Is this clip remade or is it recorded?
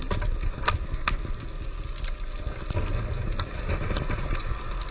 recorded